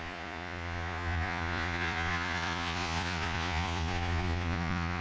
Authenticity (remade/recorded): remade